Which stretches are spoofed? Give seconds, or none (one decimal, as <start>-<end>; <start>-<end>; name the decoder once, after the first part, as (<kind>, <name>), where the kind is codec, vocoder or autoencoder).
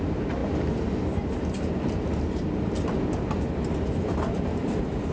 none